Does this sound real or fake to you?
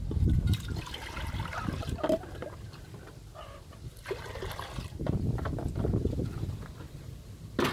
real